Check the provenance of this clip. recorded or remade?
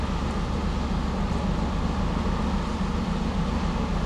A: recorded